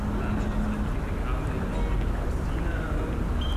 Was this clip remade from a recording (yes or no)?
no